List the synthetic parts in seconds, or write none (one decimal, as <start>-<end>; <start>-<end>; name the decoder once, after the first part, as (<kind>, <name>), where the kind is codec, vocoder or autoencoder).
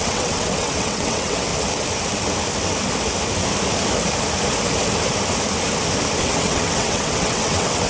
0.0-1.5 (vocoder, WaveNeXt); 6.2-7.9